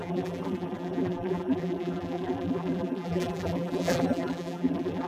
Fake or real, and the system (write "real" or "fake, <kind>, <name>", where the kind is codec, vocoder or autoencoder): fake, vocoder, BigVGAN v2